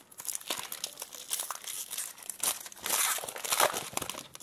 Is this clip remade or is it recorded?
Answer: recorded